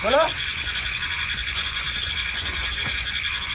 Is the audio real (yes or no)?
no